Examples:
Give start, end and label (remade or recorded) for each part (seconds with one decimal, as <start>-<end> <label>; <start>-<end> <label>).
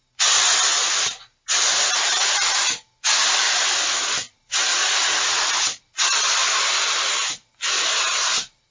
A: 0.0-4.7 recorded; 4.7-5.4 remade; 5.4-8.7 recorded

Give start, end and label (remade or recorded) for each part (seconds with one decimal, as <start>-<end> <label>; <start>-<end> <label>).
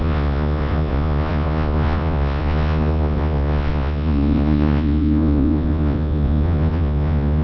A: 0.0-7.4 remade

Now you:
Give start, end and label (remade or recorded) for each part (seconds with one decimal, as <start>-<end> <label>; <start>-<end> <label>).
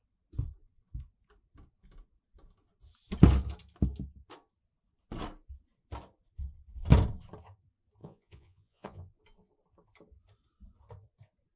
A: 0.0-8.0 recorded; 8.0-9.2 remade; 9.2-11.6 recorded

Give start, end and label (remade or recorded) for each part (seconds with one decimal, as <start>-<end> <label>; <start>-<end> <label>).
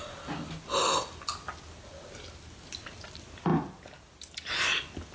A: 0.0-5.1 recorded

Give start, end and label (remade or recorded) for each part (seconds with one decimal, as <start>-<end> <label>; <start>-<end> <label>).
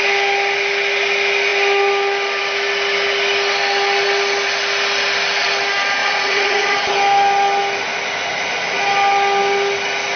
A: 0.0-6.0 recorded; 6.0-6.9 remade; 6.9-10.2 recorded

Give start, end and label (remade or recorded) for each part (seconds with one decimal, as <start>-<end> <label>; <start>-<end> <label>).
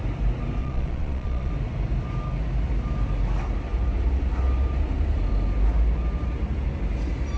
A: 0.0-0.6 recorded; 0.6-1.5 remade; 1.5-7.4 recorded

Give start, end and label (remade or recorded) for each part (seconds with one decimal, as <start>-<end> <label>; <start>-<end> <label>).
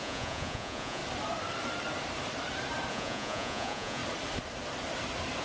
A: 0.0-1.0 remade; 1.0-2.9 recorded; 2.9-4.0 remade; 4.0-5.4 recorded